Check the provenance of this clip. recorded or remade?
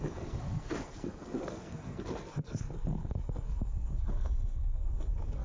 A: remade